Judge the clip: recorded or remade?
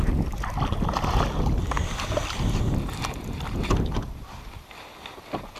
recorded